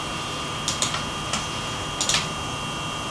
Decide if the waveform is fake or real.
real